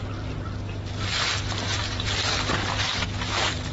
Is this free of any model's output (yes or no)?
yes